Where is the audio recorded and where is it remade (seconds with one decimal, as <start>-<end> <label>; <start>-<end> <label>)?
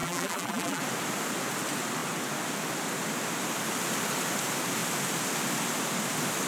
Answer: 0.0-0.8 remade; 0.8-6.5 recorded